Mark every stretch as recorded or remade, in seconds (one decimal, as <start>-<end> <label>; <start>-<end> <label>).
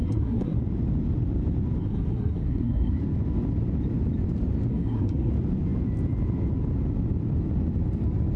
0.0-0.6 remade; 0.6-1.8 recorded; 1.8-3.0 remade; 3.0-4.7 recorded; 4.7-5.3 remade; 5.3-8.4 recorded